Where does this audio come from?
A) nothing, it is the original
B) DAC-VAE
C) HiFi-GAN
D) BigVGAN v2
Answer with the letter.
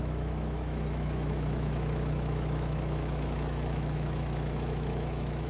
B